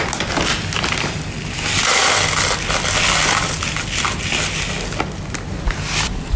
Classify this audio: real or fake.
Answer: real